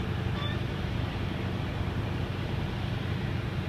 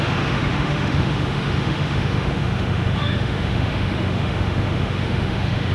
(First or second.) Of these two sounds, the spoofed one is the second